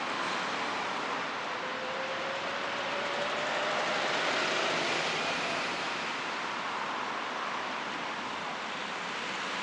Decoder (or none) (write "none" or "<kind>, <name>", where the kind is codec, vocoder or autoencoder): vocoder, BigVGAN v2